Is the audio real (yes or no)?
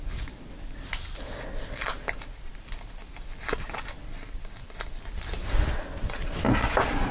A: yes